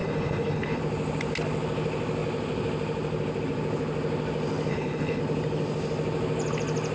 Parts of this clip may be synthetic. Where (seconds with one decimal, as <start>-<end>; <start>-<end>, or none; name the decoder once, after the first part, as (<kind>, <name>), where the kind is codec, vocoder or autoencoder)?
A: 0.0-0.8 (codec, HILCodec); 4.7-5.2